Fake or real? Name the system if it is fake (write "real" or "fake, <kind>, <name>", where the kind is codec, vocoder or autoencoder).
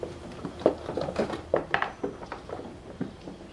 real